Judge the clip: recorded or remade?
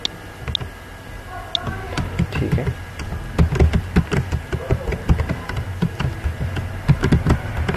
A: recorded